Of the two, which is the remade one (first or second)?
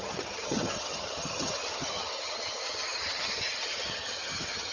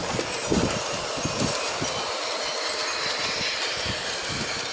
first